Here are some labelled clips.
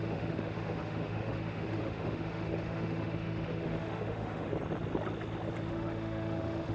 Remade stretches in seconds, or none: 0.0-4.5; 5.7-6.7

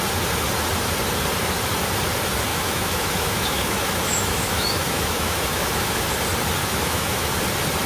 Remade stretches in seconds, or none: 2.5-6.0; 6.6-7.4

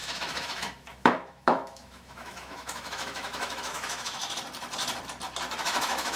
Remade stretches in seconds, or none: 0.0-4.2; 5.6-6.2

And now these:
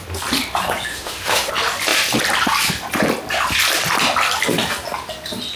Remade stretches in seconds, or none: 0.9-1.5